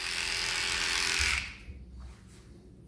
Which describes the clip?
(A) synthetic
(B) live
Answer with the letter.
B